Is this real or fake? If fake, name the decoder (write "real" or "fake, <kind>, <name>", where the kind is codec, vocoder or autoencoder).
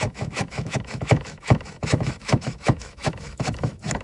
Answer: fake, autoencoder, DAC-VAE